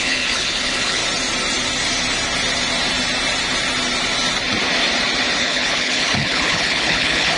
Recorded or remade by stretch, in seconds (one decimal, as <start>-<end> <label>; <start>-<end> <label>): 0.0-1.0 remade; 1.0-5.4 recorded; 5.4-7.4 remade